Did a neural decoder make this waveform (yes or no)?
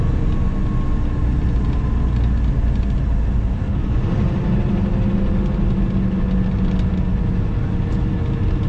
no